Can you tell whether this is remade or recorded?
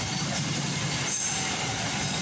remade